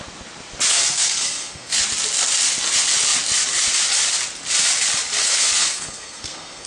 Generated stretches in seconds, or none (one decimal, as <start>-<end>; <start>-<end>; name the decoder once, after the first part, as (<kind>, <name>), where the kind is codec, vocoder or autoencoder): 0.7-1.8 (codec, SNAC); 5.2-6.7